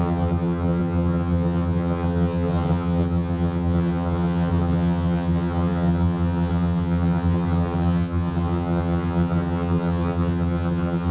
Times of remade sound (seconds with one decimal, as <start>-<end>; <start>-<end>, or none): 0.0-11.1